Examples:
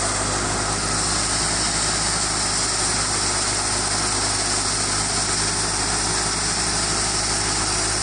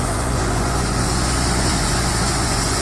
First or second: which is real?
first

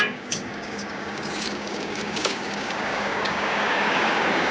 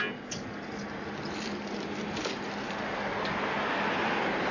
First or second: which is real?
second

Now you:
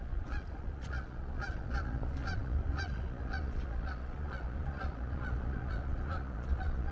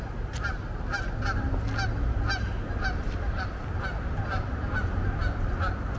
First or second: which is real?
second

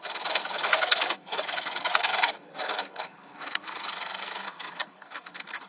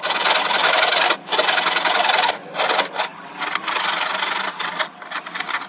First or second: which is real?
second